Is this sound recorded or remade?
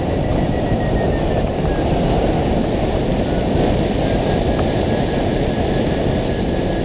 recorded